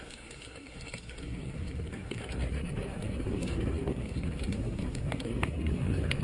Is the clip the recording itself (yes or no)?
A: no